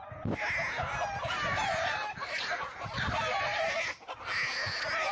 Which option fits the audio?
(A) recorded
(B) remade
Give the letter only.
A